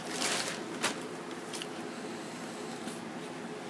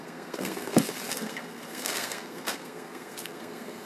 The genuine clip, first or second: first